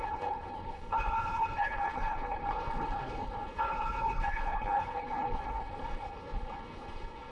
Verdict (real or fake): fake